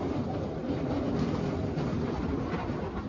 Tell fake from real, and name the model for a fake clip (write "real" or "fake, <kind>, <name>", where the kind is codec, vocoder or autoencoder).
real